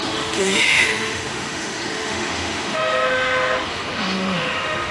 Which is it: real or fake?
fake